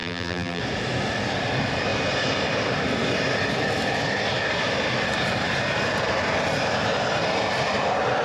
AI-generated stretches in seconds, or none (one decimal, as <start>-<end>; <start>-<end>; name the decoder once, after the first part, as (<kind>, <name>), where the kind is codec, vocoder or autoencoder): 0.0-0.6 (vocoder, BigVGAN v2)